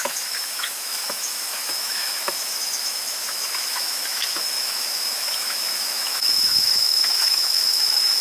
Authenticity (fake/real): fake